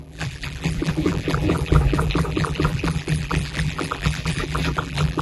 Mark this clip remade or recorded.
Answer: remade